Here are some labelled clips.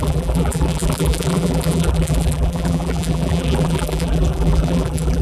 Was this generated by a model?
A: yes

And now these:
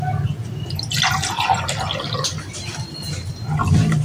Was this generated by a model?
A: no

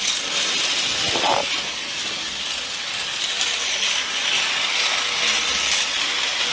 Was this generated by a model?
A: no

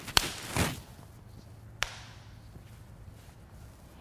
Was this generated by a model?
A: no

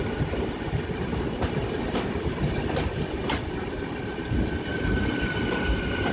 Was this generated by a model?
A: yes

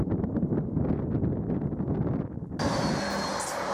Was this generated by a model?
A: no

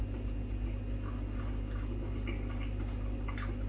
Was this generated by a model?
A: no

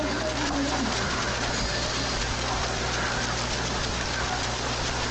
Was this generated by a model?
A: yes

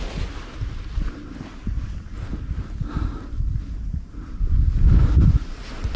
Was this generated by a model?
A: no